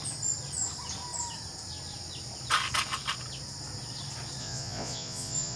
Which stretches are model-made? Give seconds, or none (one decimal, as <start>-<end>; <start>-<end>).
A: 4.4-5.6

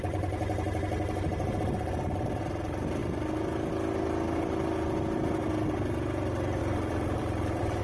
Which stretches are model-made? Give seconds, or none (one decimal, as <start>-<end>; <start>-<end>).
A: 6.6-7.8

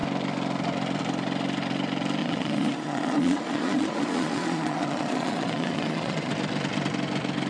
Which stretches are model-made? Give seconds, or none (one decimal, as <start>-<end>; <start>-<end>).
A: 2.2-6.3

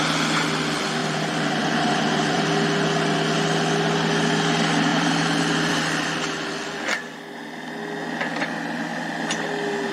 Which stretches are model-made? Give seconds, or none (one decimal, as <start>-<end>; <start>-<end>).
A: 1.0-2.5; 4.9-5.7